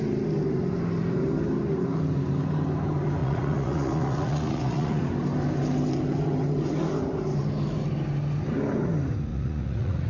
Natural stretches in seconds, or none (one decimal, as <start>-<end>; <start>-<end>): 0.0-3.2; 5.0-9.3